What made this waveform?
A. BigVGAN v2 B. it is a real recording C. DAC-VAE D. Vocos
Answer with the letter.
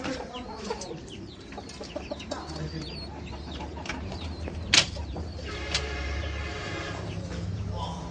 A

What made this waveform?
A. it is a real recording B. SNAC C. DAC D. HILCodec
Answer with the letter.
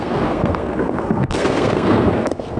B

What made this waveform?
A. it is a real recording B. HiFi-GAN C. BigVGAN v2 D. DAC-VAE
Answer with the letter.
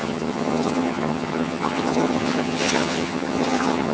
B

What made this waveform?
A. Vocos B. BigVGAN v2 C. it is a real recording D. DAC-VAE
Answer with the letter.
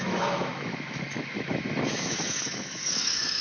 D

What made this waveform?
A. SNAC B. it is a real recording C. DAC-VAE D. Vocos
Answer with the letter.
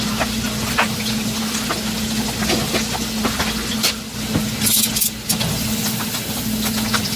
B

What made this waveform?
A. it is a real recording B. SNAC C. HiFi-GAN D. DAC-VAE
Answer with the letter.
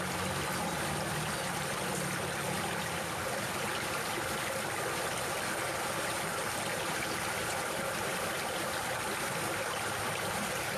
A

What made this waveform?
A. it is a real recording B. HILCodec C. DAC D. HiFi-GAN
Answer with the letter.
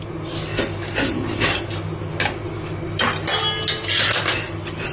A